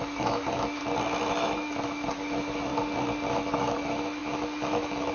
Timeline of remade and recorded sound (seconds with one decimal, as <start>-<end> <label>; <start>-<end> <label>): 0.0-0.8 remade; 0.8-1.3 recorded; 1.3-2.7 remade; 2.7-3.3 recorded; 3.3-5.1 remade